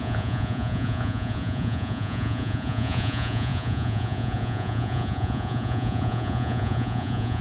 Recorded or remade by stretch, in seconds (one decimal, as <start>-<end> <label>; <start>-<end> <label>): 0.0-7.4 remade